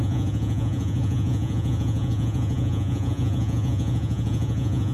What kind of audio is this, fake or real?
fake